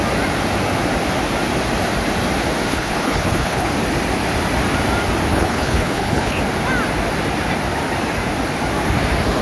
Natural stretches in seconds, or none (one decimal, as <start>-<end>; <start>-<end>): 0.0-2.7; 3.7-5.3; 6.4-9.4

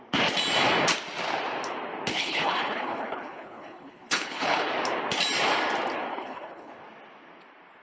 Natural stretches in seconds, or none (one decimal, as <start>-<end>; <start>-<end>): 0.0-2.1; 4.7-6.1; 6.7-7.8

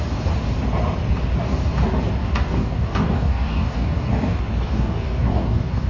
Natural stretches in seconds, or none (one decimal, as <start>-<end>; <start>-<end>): 0.0-2.2

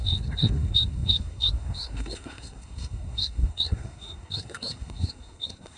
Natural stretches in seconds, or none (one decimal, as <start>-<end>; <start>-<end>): none

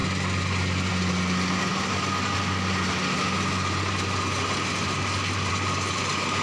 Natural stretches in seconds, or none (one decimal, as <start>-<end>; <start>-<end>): 0.0-6.4